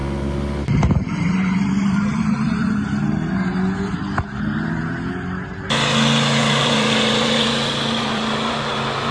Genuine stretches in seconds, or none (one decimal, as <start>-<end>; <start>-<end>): 0.0-0.9; 2.6-6.4